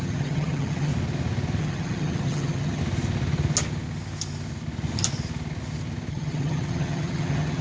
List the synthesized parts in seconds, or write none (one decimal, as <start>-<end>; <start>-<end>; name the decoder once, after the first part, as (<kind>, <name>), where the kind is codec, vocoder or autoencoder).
0.0-0.9 (vocoder, HiFi-GAN); 1.6-2.8; 6.1-7.6